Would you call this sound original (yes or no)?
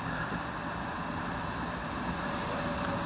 yes